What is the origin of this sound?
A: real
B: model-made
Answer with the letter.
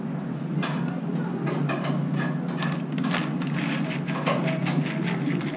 A